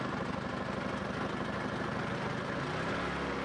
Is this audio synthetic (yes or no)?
no